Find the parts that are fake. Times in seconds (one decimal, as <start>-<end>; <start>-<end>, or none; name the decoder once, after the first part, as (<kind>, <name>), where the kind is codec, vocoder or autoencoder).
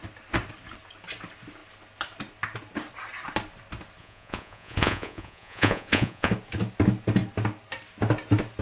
4.0-6.3 (vocoder, Vocos)